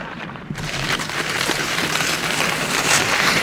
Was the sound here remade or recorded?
remade